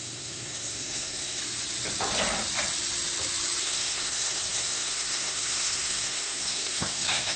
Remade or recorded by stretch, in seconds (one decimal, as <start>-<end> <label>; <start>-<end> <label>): 0.0-1.4 remade; 1.4-3.6 recorded; 3.6-7.4 remade